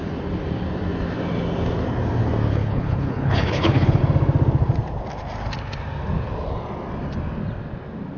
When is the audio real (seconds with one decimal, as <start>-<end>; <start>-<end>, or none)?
0.0-2.5; 4.0-8.2